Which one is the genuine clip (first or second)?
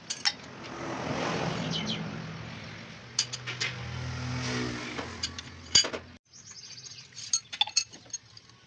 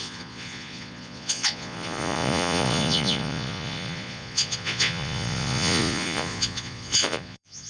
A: first